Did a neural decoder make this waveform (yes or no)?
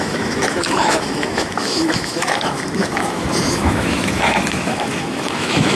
yes